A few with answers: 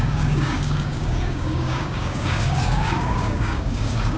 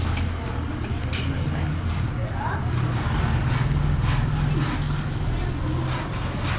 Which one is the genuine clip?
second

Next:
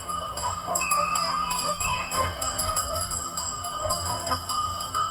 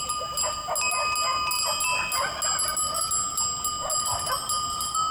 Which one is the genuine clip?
second